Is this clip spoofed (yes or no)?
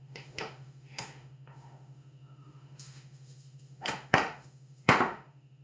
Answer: yes